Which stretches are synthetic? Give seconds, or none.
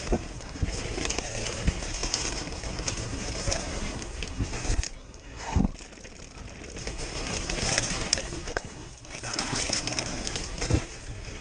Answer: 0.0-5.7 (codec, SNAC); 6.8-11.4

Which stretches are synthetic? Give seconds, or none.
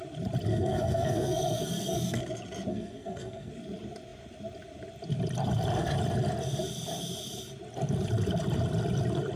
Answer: 0.5-2.2 (codec, SNAC); 2.7-3.5